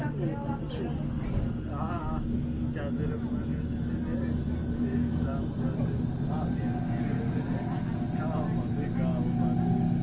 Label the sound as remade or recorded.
recorded